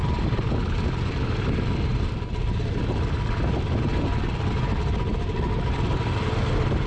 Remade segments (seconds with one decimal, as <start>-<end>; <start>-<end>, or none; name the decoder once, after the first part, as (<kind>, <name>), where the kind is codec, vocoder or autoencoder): none